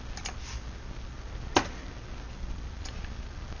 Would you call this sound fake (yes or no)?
no